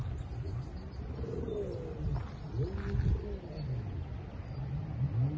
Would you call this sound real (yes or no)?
yes